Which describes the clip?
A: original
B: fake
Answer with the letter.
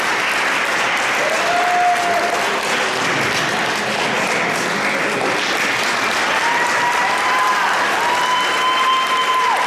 A